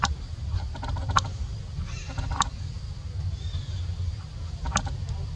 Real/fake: real